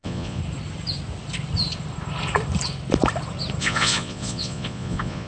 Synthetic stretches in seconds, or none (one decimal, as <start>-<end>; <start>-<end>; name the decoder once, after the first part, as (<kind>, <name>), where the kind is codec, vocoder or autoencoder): 0.0-0.4 (vocoder, Vocos); 3.6-5.3